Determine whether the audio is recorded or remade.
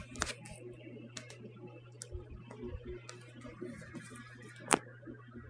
recorded